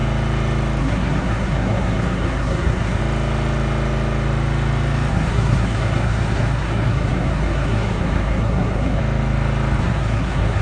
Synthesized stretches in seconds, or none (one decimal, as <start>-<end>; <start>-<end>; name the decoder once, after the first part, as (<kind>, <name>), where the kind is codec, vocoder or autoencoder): 0.8-3.0 (codec, SNAC); 5.1-9.0; 9.8-10.6